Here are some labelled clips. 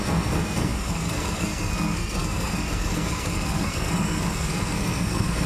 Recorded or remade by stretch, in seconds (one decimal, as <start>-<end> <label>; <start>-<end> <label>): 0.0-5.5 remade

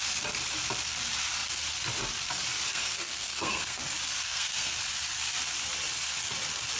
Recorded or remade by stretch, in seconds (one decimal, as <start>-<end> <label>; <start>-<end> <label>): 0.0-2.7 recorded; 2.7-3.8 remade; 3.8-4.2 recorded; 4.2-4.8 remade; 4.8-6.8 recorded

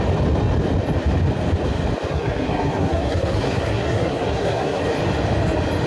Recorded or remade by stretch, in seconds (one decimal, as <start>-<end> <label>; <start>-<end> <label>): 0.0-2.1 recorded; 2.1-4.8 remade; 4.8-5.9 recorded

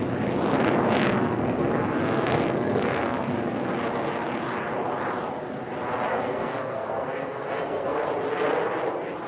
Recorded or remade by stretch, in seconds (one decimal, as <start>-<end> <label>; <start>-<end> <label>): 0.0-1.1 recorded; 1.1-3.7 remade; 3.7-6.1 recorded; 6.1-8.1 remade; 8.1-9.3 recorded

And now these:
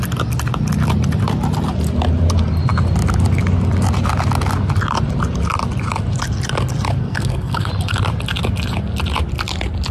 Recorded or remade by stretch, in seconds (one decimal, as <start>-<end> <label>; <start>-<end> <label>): 0.0-7.0 recorded; 7.0-7.7 remade; 7.7-9.9 recorded